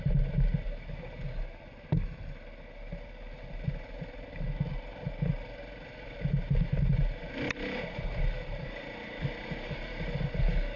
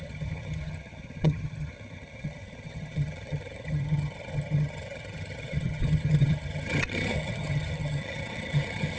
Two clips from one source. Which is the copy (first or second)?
second